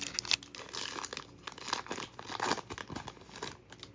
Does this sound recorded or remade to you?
recorded